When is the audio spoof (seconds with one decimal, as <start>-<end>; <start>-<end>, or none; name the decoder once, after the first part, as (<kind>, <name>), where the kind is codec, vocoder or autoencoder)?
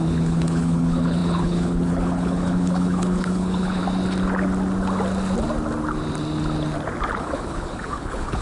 0.0-3.8 (codec, HILCodec); 7.2-8.4